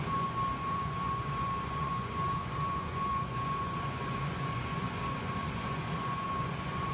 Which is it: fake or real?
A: fake